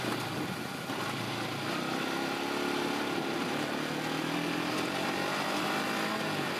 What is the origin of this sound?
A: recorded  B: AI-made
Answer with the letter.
A